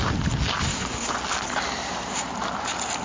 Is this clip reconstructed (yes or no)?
no